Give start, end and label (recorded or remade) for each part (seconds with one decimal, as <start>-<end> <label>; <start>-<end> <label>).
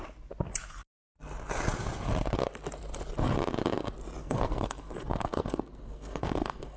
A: 0.0-4.2 recorded; 4.2-6.8 remade